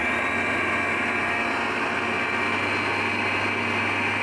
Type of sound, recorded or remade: recorded